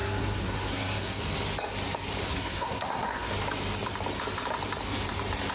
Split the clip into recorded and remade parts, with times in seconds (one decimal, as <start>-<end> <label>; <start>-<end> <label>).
0.0-1.2 remade; 1.2-2.2 recorded; 2.2-3.3 remade; 3.3-5.5 recorded